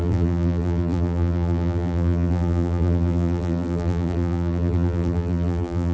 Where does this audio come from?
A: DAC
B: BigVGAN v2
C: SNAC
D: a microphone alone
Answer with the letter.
B